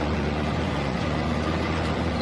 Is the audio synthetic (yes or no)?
yes